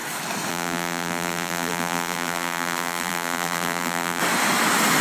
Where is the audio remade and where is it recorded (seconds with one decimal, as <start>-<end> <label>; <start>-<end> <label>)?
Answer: 0.0-0.5 recorded; 0.5-4.2 remade; 4.2-5.0 recorded